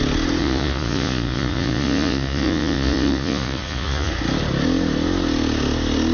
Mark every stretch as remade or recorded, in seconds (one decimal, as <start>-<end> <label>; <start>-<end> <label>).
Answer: 0.0-0.4 recorded; 0.4-4.1 remade; 4.1-6.1 recorded